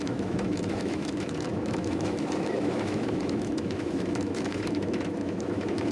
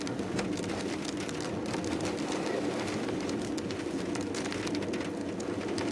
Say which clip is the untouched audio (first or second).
second